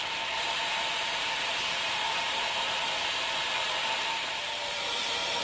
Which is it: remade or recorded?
remade